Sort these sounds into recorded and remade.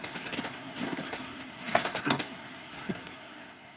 remade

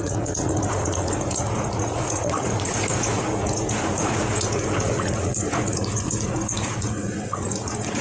remade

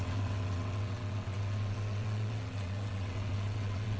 remade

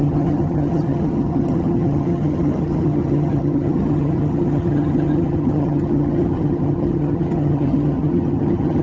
remade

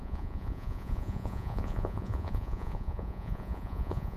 remade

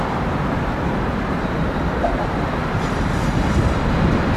recorded